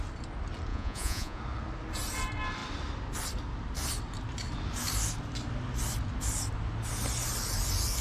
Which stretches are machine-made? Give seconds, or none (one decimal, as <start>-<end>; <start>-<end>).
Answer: 0.7-1.4